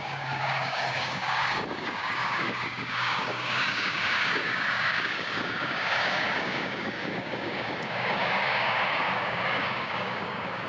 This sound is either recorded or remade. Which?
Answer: remade